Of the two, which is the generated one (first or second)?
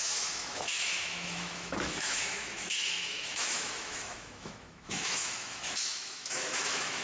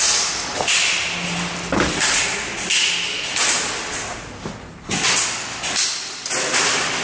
first